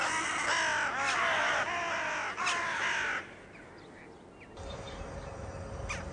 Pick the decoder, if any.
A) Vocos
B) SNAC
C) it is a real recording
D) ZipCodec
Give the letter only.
C